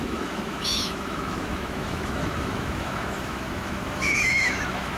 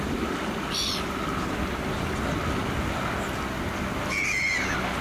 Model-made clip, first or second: first